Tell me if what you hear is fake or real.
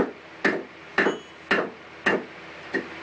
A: real